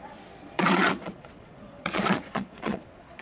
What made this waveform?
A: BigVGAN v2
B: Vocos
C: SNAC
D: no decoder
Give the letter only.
B